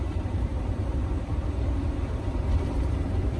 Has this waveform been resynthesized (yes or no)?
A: yes